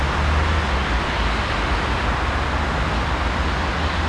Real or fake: real